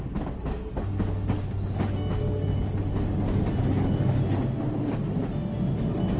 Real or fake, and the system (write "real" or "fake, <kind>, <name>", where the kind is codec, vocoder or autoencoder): real